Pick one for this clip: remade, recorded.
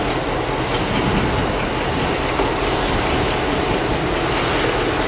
recorded